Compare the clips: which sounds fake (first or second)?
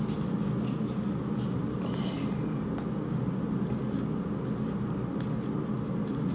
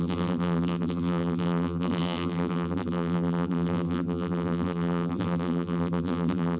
second